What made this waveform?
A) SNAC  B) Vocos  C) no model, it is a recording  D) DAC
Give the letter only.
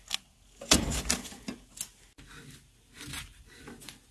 C